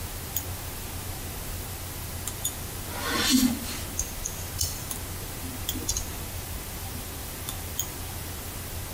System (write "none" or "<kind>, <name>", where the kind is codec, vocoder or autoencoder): none